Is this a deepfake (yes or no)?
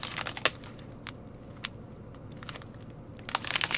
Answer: no